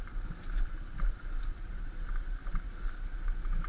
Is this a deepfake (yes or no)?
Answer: no